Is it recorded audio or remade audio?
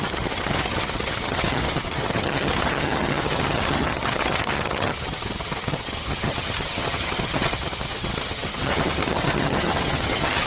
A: remade